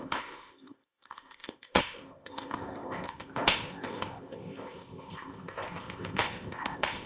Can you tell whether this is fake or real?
fake